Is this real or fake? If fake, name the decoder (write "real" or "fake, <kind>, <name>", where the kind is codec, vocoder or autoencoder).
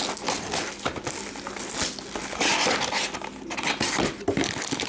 real